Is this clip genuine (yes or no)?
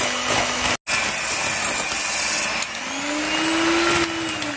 yes